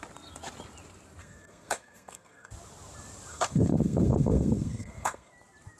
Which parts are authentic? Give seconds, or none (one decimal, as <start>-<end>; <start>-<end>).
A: 0.0-1.2; 2.5-3.3; 5.3-5.8